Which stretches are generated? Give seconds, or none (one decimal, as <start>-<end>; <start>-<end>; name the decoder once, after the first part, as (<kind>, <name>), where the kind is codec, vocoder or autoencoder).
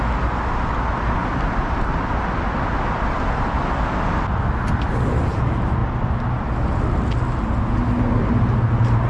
none